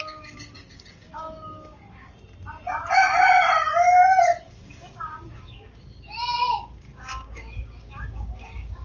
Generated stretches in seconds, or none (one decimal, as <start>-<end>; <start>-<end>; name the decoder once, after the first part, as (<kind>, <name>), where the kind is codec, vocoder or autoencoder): 0.0-2.1 (codec, DAC); 4.2-8.8